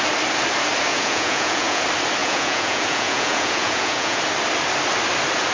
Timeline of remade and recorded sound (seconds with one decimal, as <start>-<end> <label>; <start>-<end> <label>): 0.0-0.9 recorded; 0.9-1.8 remade; 1.8-2.2 recorded; 2.2-4.2 remade; 4.2-5.5 recorded